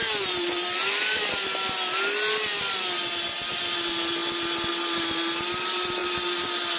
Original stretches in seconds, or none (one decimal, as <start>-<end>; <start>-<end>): 0.0-6.8